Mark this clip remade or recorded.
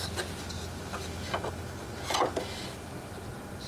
recorded